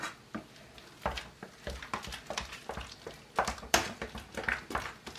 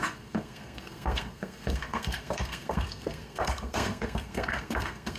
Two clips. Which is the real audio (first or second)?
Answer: first